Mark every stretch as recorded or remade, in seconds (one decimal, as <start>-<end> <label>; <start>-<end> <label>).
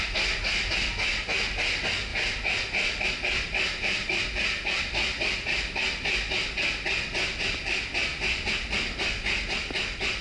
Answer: 0.0-10.2 recorded